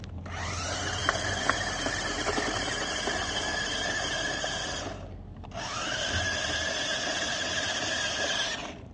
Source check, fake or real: real